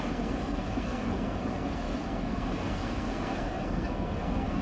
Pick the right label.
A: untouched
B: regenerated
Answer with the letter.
B